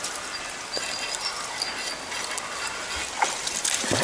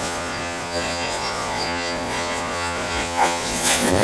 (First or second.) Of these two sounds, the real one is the first